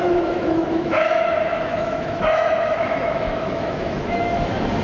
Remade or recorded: remade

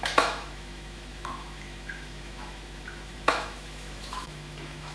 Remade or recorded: remade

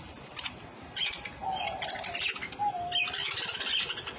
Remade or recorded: recorded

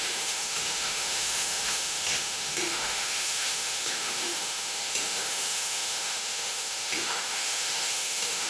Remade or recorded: remade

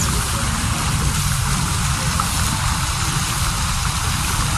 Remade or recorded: recorded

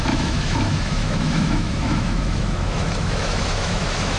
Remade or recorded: remade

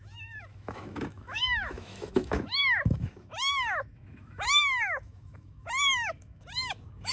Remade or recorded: remade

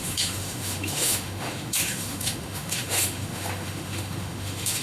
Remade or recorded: remade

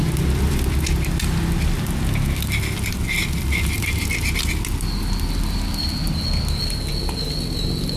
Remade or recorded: recorded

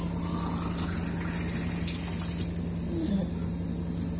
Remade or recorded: recorded